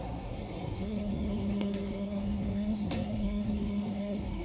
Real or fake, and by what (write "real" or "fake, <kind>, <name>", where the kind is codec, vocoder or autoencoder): fake, codec, SNAC